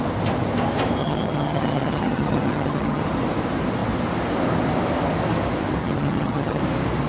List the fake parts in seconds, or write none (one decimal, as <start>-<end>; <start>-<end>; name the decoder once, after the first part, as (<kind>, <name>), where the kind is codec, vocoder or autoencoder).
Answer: 1.0-3.0 (vocoder, HiFi-GAN); 5.8-6.6